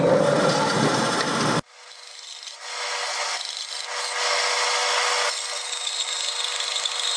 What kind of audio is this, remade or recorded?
recorded